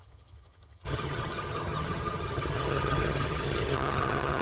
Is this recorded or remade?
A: remade